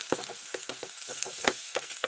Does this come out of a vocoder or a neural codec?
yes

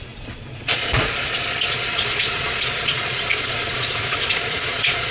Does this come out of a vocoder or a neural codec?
yes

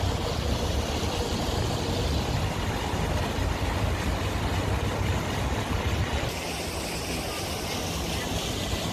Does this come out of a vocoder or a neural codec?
no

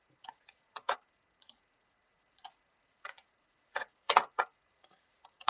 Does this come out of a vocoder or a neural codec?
yes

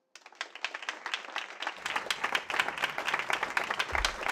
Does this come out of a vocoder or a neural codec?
no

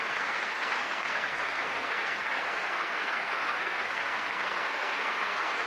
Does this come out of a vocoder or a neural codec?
yes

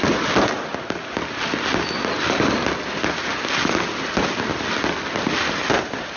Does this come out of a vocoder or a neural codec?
no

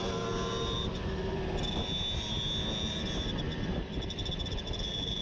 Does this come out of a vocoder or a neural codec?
no